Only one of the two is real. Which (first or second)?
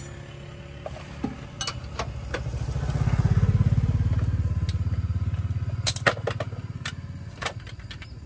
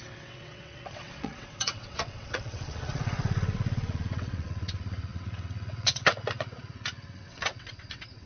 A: first